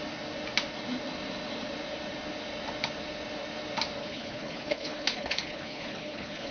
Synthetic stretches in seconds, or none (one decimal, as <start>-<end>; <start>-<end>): 4.0-6.5